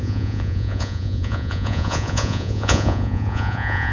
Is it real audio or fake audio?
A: fake